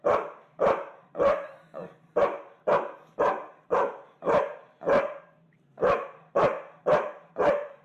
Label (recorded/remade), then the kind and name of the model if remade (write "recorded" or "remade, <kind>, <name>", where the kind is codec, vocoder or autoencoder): remade, vocoder, BigVGAN v2